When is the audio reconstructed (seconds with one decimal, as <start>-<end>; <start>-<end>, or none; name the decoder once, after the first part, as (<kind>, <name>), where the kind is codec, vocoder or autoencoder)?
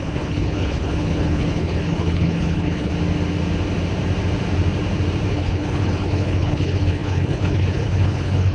0.0-2.9 (codec, HILCodec); 5.3-8.5